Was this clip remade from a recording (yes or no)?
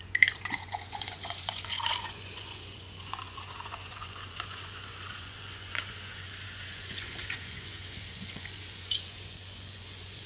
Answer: yes